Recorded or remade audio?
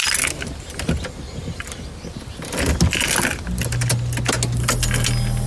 recorded